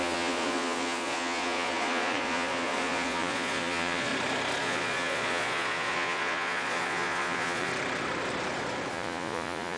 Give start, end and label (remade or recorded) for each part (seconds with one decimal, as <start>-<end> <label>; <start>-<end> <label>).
0.0-4.1 remade; 4.1-4.6 recorded; 4.6-7.7 remade; 7.7-8.9 recorded; 8.9-9.8 remade